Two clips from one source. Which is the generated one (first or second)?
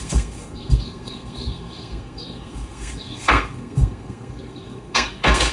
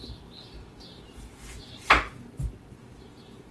first